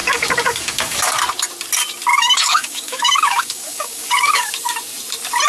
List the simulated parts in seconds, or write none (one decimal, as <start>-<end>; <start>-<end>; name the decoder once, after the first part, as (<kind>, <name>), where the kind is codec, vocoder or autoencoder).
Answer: 0.0-1.2 (codec, DAC); 2.1-4.5